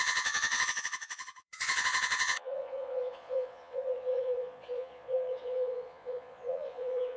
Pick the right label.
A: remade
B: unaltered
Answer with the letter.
A